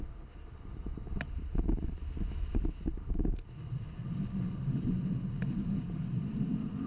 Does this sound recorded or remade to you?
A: recorded